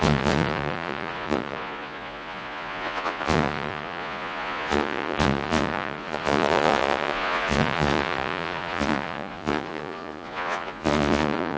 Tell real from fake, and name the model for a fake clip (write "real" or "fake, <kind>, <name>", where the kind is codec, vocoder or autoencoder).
fake, vocoder, Vocos